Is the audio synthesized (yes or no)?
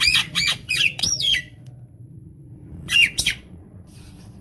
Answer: yes